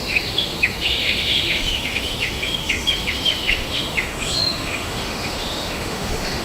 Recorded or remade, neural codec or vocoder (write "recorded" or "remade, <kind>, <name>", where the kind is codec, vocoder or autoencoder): remade, autoencoder, DAC-VAE